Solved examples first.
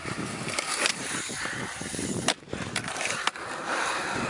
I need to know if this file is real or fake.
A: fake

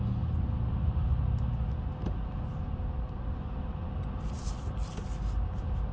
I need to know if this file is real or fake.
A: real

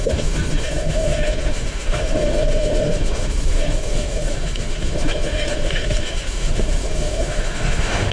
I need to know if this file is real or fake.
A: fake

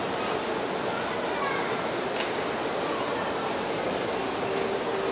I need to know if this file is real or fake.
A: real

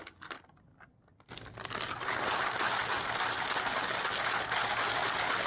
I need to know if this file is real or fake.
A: real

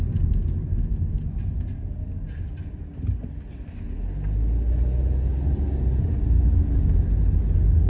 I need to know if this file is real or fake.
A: real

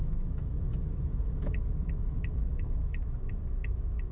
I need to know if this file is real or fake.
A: fake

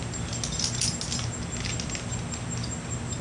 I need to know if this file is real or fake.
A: real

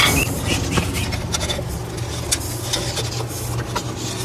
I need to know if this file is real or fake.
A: real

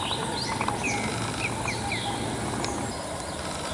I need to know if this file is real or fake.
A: real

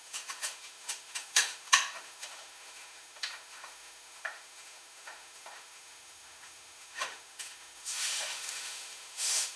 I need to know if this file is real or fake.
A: fake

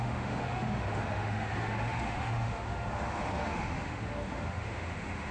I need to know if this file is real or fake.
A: fake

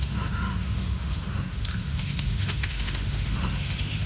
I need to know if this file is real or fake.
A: fake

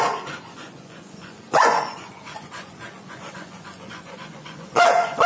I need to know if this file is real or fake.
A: fake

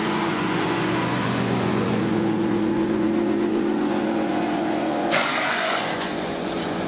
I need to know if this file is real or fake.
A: fake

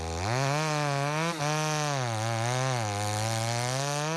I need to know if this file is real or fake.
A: real